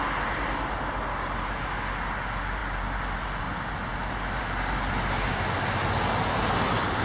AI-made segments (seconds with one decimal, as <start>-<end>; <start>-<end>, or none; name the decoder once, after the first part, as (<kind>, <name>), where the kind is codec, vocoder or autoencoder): none